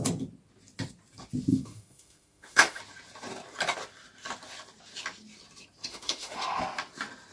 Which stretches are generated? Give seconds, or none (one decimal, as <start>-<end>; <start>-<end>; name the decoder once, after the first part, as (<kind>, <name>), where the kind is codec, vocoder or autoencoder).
1.5-2.8 (autoencoder, DAC-VAE); 5.9-6.6